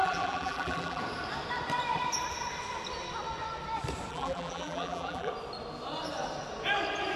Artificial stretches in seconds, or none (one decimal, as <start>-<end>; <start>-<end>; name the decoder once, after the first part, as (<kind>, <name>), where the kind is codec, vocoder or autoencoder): 0.0-1.0 (vocoder, BigVGAN v2); 4.1-5.3